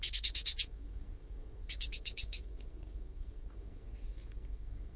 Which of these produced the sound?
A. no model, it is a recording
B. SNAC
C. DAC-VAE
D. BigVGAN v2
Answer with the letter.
B